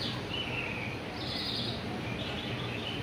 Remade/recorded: remade